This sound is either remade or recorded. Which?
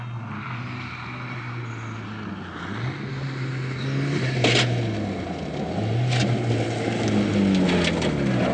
recorded